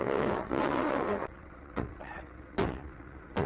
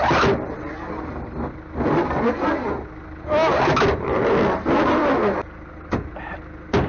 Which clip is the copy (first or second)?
first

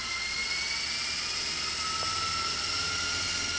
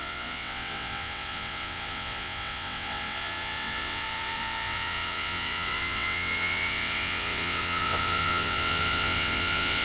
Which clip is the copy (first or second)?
second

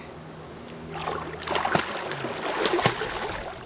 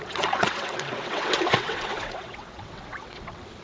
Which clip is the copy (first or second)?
second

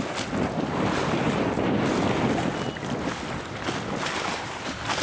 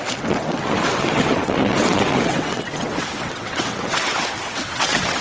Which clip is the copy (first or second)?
second